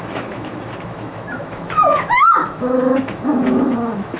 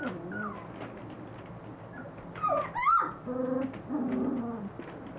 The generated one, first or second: first